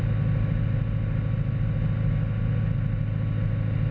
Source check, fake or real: real